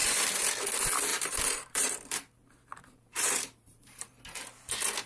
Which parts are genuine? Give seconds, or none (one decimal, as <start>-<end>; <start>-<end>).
0.5-1.1; 4.2-5.1